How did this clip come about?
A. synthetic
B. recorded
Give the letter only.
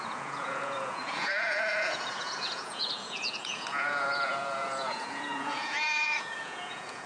A